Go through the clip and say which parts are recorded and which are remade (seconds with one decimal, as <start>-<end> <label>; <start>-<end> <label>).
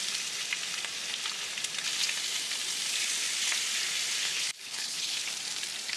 0.0-4.2 recorded; 4.2-5.3 remade; 5.3-6.0 recorded